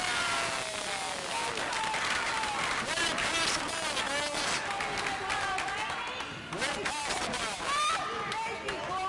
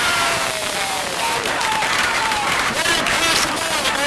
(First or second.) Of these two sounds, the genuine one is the first